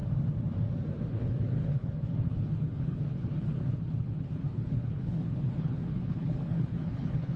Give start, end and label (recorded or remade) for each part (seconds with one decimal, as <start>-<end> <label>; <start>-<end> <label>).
0.0-0.9 recorded; 0.9-7.4 remade